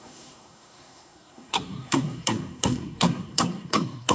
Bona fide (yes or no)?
no